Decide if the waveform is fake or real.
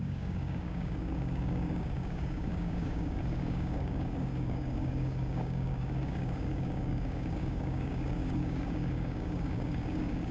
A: fake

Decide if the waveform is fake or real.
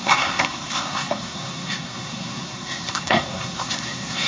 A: fake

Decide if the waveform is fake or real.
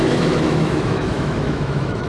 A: fake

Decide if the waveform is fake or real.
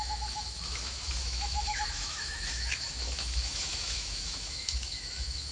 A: fake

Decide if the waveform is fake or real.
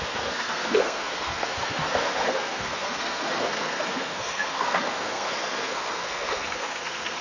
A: fake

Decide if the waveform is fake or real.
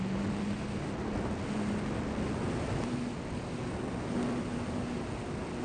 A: real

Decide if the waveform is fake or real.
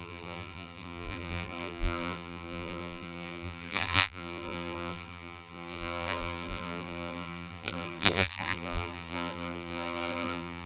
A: fake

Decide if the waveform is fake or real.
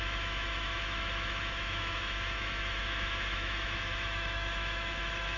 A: fake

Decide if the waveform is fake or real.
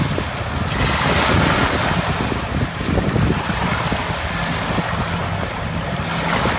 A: real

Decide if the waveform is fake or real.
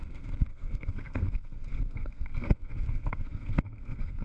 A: fake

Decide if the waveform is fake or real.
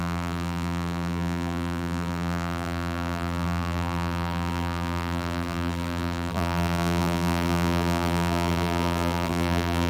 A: fake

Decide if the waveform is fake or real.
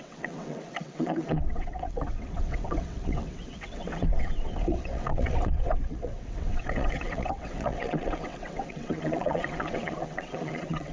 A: fake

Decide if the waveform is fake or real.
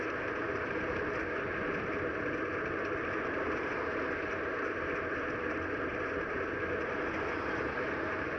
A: real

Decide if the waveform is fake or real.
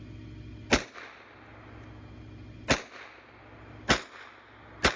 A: real